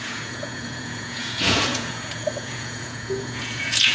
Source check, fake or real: fake